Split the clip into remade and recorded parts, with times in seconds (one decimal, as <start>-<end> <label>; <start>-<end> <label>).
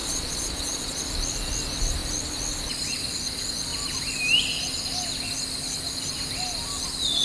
0.0-1.0 remade; 1.0-7.2 recorded